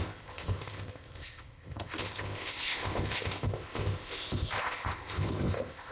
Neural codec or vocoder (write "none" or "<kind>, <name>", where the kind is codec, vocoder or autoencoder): codec, ZipCodec